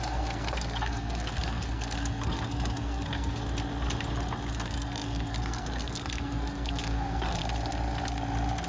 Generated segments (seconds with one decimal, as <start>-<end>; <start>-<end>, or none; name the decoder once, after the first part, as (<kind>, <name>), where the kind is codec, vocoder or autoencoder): 0.0-3.4 (codec, SNAC); 4.5-7.4